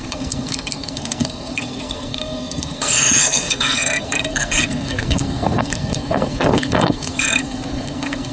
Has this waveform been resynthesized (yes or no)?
yes